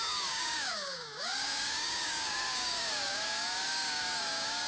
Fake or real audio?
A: fake